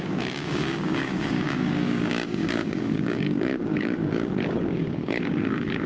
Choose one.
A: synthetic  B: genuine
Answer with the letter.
A